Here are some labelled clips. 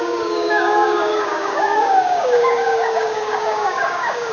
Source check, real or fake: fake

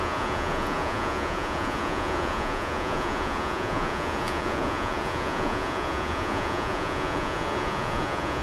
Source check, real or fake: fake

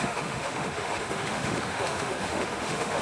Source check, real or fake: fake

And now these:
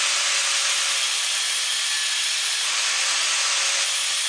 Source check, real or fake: real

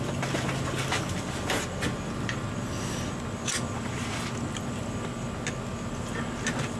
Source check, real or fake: real